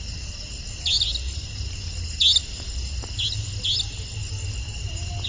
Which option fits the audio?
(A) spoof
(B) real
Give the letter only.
B